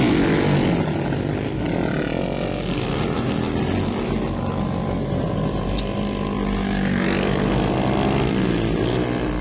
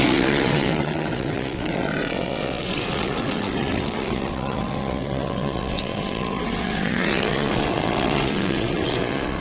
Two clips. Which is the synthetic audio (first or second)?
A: second